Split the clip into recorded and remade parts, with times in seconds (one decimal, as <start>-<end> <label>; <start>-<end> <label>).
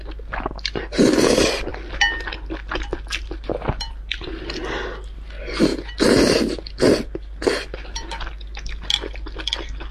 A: 0.0-9.9 recorded